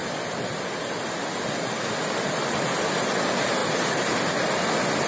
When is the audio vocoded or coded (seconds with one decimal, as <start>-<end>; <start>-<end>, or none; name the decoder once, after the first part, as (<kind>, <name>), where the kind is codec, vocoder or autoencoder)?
none